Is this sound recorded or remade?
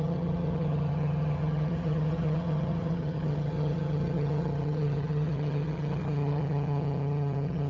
remade